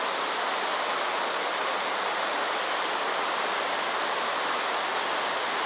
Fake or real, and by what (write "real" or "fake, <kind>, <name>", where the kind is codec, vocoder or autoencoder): real